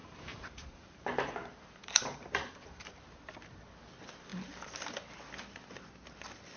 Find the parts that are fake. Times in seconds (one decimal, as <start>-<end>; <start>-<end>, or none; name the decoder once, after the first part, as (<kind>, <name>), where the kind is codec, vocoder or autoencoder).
0.0-2.9 (vocoder, BigVGAN v2)